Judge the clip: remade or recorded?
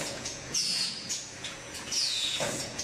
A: remade